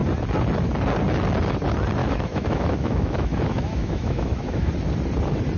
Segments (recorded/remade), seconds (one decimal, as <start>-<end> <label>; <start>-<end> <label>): 0.0-2.0 recorded; 2.0-4.7 remade; 4.7-5.6 recorded